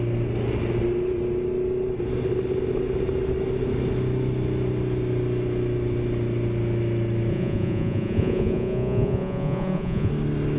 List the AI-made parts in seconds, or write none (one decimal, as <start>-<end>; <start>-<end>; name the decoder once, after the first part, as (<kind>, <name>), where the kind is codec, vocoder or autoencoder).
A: 7.3-10.1 (vocoder, Vocos)